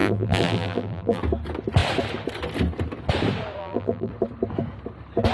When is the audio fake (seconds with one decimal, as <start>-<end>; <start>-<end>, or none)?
0.0-1.2; 3.6-4.1